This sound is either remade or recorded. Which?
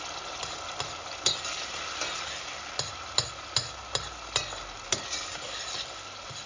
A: recorded